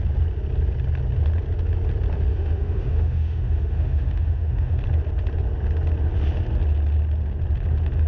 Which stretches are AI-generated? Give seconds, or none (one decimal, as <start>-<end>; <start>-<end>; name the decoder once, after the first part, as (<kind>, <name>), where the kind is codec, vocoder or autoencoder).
2.3-4.8 (autoencoder, DAC-VAE)